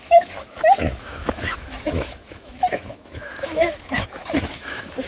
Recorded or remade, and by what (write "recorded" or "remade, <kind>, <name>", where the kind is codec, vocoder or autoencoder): remade, autoencoder, DAC-VAE